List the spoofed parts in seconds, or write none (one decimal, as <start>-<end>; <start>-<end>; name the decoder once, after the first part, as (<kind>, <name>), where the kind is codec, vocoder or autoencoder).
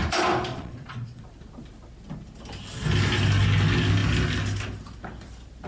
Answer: 0.5-1.2 (vocoder, Vocos)